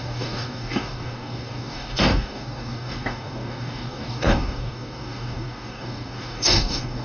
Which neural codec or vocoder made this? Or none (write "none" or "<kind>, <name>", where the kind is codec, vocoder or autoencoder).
codec, DAC